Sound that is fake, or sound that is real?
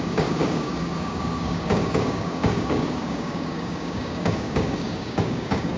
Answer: fake